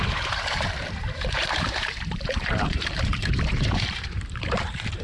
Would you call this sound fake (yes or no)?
yes